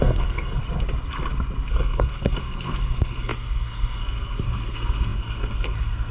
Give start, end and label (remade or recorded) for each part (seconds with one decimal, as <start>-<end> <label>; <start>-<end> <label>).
0.0-0.6 remade; 0.6-1.7 recorded; 1.7-6.1 remade